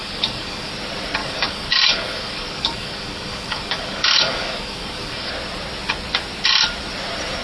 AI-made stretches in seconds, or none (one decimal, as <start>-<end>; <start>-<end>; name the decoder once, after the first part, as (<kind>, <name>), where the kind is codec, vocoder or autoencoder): 0.0-0.7 (codec, DAC); 1.2-5.3